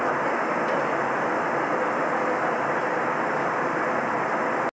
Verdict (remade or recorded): recorded